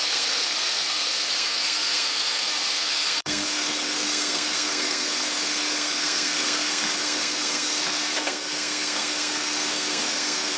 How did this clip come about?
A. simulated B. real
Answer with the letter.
A